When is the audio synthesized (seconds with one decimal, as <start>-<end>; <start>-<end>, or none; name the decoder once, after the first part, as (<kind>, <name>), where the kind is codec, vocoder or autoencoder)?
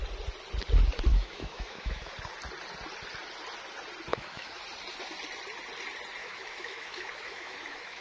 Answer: 1.1-2.1 (autoencoder, DAC-VAE); 4.1-4.6; 6.2-8.0